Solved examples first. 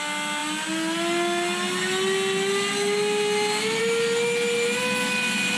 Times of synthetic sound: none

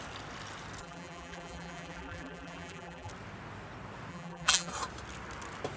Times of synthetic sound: 0.8-3.1 (vocoder, BigVGAN v2); 4.1-4.7

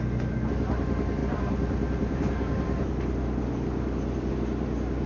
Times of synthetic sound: 1.2-4.3 (vocoder, BigVGAN v2)

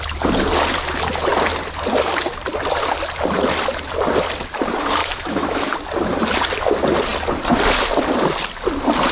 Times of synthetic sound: 5.0-5.7 (autoencoder, DAC-VAE)

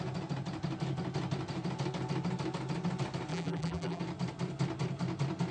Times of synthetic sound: 3.3-4.0 (vocoder, BigVGAN v2)

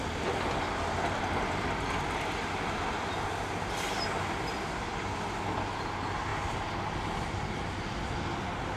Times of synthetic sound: none

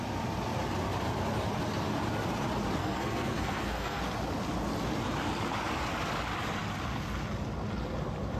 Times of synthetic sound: 2.8-4.0 (codec, SNAC)